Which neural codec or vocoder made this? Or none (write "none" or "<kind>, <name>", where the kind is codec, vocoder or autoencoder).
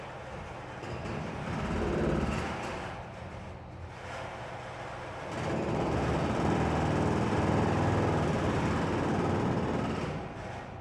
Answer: none